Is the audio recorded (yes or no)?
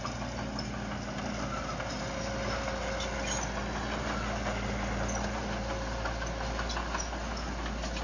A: yes